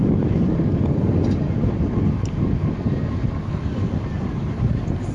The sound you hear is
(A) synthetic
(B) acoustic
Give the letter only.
B